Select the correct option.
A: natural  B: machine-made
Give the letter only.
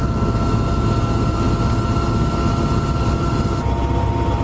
A